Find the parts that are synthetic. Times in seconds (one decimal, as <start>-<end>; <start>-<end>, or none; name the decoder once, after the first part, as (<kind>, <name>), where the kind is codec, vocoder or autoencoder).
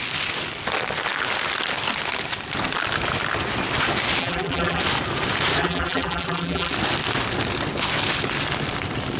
4.2-4.8 (vocoder, BigVGAN v2); 5.6-6.7